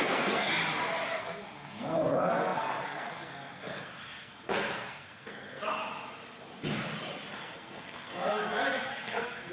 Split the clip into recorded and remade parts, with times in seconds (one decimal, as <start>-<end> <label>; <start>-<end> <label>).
0.0-0.6 remade; 0.6-1.2 recorded; 1.2-5.6 remade; 5.6-7.4 recorded; 7.4-9.5 remade